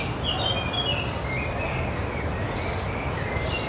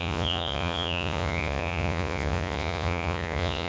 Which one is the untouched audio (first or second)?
first